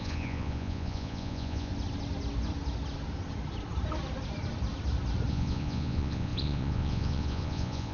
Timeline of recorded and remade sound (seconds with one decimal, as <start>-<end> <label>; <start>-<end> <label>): 0.0-1.7 remade; 1.7-5.3 recorded; 5.3-7.9 remade